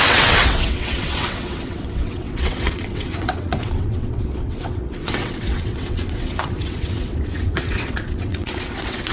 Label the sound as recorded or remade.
remade